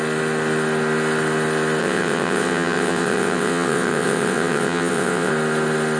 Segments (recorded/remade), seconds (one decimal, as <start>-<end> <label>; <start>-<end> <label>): 0.0-1.8 recorded; 1.8-5.3 remade; 5.3-6.0 recorded